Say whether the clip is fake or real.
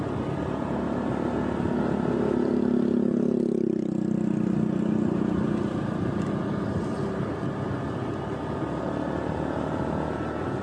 real